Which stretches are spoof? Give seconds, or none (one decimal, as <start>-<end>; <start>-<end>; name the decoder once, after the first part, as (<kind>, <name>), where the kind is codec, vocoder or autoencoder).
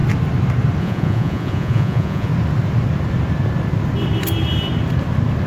0.8-2.3 (vocoder, Vocos)